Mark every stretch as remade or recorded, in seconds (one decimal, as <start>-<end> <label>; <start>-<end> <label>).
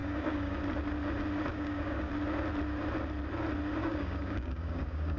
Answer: 0.0-0.6 remade; 0.6-1.5 recorded; 1.5-2.1 remade; 2.1-3.8 recorded; 3.8-5.2 remade